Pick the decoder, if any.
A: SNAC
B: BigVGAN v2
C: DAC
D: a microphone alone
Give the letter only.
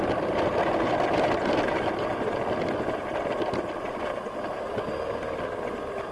D